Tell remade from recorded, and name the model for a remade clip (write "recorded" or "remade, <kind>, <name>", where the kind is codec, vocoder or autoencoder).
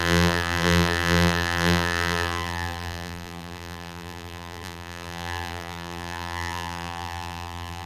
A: remade, vocoder, BigVGAN v2